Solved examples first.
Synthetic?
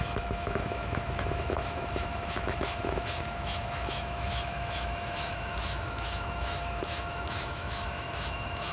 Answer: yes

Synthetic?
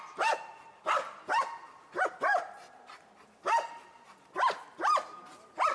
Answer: no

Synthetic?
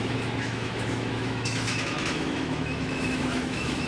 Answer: yes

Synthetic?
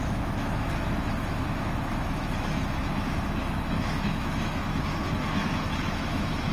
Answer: yes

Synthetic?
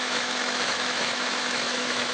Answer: yes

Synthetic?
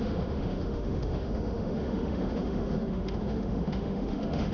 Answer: yes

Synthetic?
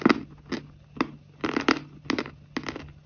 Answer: no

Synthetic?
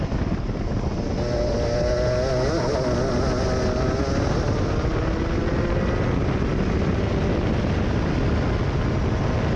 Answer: no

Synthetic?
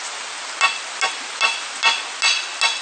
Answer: no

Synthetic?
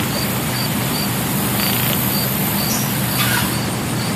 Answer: no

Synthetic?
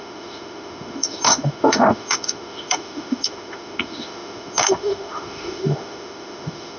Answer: yes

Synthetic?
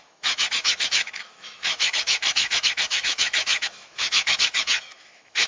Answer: yes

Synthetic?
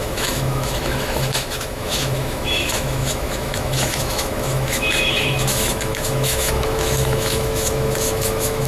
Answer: yes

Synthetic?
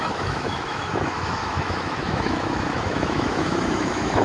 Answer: yes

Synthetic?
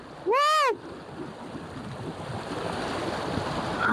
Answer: no